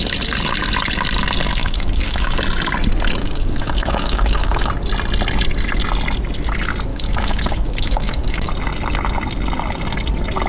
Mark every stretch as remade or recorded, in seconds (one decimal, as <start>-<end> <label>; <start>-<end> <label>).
0.0-1.6 recorded; 1.6-2.4 remade; 2.4-3.2 recorded; 3.2-4.7 remade; 4.7-6.9 recorded; 6.9-8.5 remade; 8.5-10.5 recorded